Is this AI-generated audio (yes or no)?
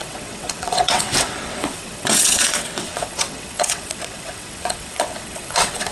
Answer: yes